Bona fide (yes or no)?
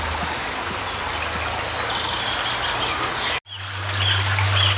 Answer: yes